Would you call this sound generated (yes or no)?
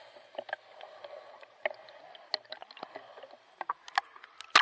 no